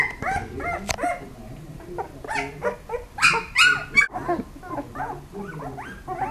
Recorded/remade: recorded